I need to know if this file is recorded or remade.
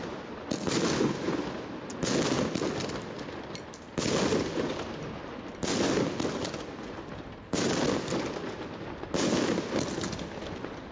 recorded